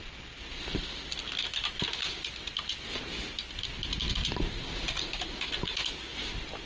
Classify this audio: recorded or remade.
recorded